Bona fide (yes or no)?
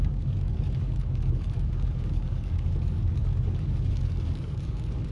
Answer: no